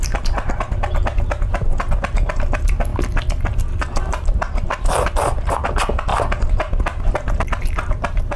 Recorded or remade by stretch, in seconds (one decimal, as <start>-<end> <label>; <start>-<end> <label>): 0.0-8.4 recorded